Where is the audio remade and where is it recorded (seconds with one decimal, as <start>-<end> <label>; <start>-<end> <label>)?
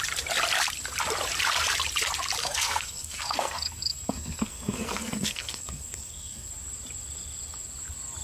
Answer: 0.0-2.4 recorded; 2.4-6.5 remade; 6.5-8.2 recorded